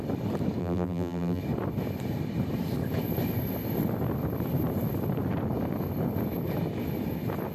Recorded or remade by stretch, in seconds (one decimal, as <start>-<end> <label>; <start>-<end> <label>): 0.0-0.6 recorded; 0.6-1.4 remade; 1.4-7.5 recorded